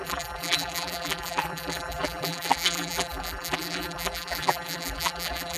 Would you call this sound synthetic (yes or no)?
yes